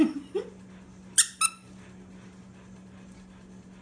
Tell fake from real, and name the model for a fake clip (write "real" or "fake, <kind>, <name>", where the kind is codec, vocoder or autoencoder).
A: real